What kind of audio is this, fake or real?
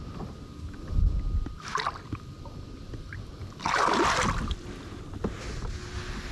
real